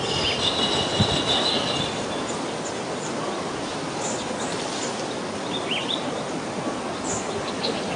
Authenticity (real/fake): real